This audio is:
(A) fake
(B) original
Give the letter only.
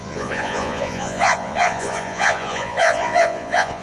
A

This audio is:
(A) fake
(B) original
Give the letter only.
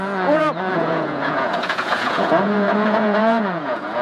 A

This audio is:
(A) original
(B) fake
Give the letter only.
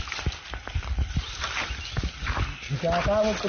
A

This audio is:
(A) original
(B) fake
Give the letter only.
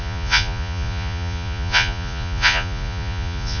B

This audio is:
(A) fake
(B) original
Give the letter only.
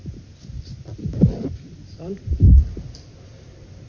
B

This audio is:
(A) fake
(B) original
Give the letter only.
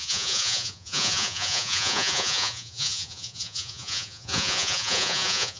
A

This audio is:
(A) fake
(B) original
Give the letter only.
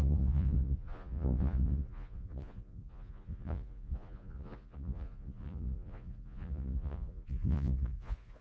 A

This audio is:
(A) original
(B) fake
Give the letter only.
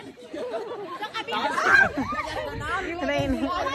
A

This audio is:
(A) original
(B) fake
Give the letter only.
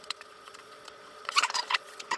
B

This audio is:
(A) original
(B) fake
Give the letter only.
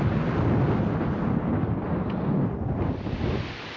A